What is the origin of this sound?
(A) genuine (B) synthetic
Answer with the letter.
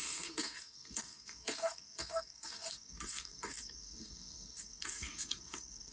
B